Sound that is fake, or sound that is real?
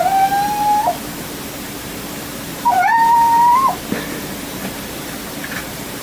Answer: fake